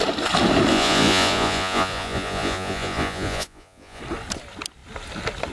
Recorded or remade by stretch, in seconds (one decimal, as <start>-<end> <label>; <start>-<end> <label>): 0.0-0.7 recorded; 0.7-4.0 remade; 4.0-5.5 recorded